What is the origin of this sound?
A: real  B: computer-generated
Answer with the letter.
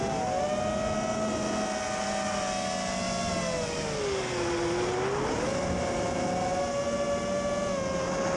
A